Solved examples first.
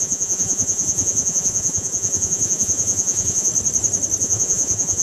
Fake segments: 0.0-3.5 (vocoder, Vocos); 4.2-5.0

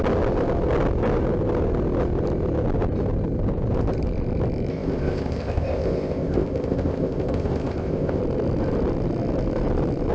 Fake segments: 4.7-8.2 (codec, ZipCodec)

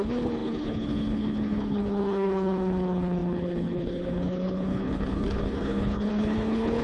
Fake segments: 0.0-6.8 (codec, HILCodec)

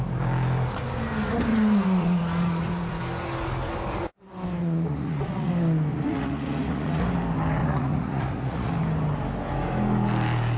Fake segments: 1.5-3.0 (vocoder, Vocos); 4.6-5.5; 5.9-7.0; 7.6-8.7